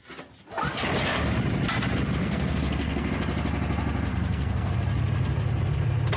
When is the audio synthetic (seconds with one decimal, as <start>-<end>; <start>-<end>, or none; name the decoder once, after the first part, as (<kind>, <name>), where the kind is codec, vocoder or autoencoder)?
2.2-3.1 (codec, SNAC); 4.1-4.7